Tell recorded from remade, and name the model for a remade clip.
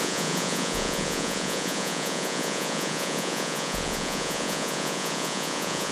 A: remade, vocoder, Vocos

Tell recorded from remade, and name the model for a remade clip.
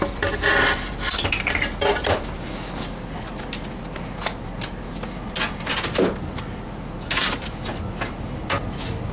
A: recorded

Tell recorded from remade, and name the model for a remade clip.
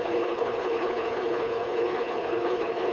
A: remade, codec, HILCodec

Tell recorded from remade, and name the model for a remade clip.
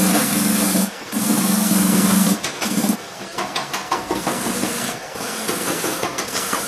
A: remade, codec, SNAC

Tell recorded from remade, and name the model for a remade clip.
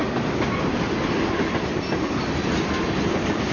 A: recorded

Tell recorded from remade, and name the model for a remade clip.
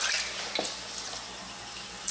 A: recorded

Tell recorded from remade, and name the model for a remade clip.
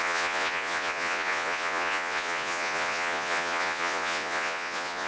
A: remade, vocoder, Vocos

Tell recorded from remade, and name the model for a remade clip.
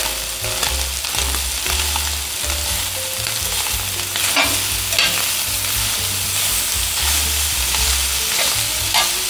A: recorded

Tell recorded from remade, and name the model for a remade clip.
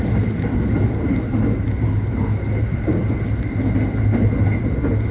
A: recorded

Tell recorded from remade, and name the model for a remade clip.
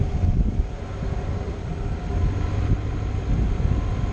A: recorded